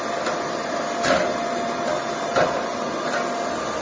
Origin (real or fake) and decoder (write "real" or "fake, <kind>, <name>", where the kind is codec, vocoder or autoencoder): real